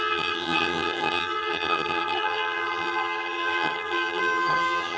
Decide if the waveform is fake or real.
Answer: fake